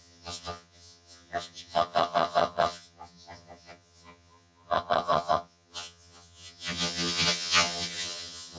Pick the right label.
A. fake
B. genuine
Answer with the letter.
A